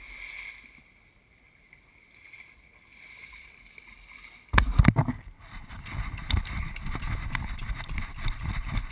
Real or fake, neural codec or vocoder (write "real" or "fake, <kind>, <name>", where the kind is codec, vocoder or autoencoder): real